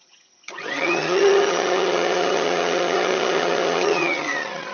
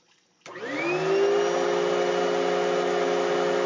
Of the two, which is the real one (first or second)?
second